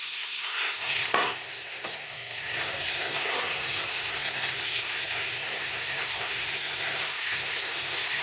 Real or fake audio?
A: fake